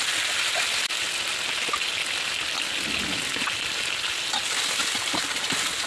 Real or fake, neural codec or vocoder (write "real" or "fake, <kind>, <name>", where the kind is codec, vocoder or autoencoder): real